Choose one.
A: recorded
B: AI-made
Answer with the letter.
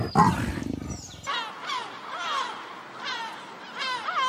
A